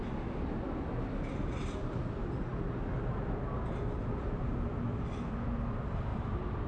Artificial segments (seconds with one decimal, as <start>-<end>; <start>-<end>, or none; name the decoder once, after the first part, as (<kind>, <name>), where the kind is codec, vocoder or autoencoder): 6.1-6.7 (vocoder, BigVGAN v2)